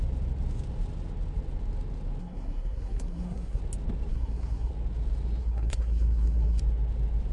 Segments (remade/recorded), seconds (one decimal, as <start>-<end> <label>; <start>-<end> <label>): 0.0-2.2 recorded; 2.2-3.6 remade; 3.6-4.1 recorded; 4.1-4.7 remade; 4.7-5.4 recorded; 5.4-6.6 remade; 6.6-7.3 recorded